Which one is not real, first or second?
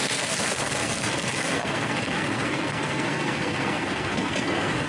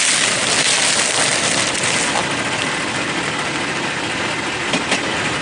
first